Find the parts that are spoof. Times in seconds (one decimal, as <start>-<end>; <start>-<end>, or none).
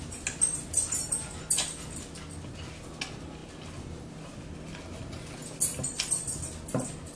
none